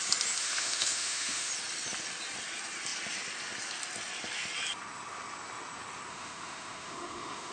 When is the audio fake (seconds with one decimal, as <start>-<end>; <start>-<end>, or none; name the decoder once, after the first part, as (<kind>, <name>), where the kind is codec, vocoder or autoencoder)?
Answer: 0.4-1.5 (autoencoder, DAC-VAE); 6.1-7.5